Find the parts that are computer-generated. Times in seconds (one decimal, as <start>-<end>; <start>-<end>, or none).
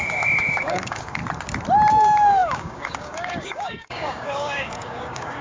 0.0-1.2; 1.9-5.4